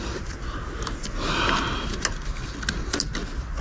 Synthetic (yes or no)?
no